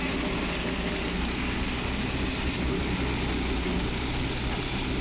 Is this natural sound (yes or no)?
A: yes